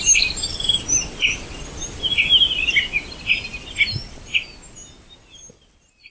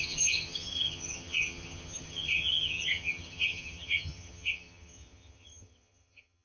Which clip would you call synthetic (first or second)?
second